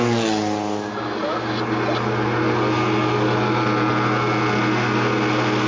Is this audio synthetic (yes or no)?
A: no